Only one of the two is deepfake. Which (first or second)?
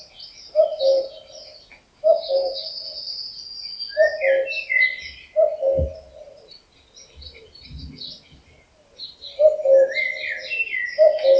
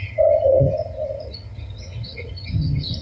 second